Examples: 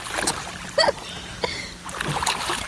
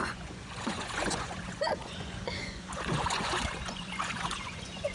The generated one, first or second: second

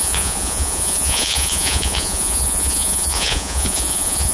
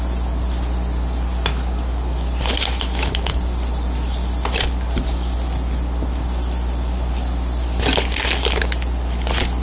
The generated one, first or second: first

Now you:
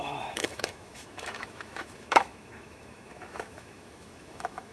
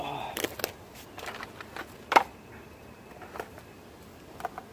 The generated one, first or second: first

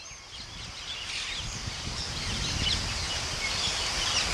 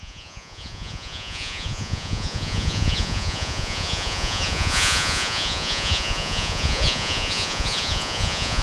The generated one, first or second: second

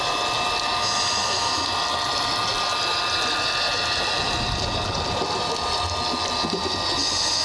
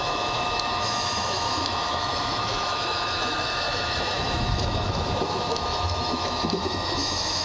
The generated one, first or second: second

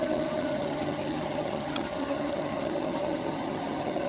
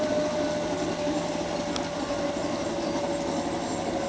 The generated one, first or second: first